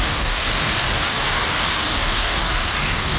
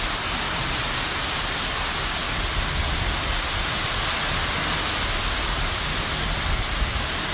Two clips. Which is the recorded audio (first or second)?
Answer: second